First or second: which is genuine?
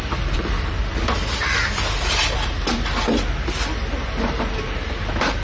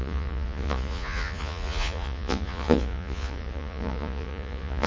first